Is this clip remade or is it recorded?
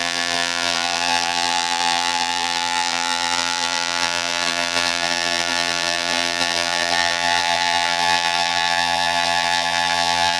remade